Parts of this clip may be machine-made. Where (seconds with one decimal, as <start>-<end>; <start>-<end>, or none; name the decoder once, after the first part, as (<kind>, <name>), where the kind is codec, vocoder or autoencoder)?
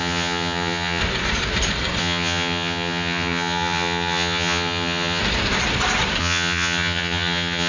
0.0-1.0 (vocoder, HiFi-GAN); 2.0-5.2; 6.2-7.7